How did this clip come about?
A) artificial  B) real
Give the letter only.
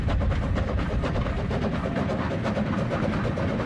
B